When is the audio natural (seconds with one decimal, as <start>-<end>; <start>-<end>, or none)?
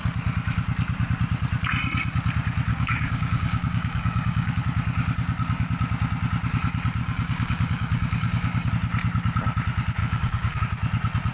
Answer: 0.0-2.7; 4.6-7.0; 8.7-10.0; 10.6-11.3